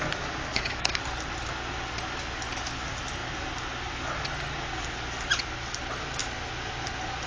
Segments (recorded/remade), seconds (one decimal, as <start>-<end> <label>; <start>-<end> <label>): 0.0-0.5 recorded; 0.5-1.0 remade; 1.0-7.3 recorded